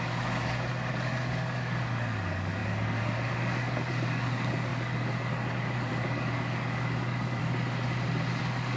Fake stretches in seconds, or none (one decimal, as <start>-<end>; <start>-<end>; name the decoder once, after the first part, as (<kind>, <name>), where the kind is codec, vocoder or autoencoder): 0.0-7.4 (codec, DAC); 8.4-8.8